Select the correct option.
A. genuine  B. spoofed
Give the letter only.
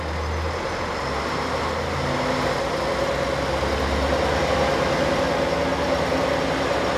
A